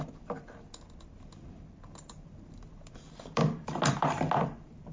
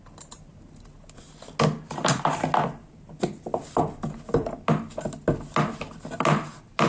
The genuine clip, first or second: second